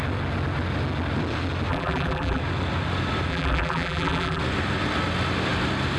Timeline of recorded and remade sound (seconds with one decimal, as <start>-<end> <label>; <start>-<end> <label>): 0.0-1.7 recorded; 1.7-2.4 remade; 2.4-3.3 recorded; 3.3-4.4 remade; 4.4-6.0 recorded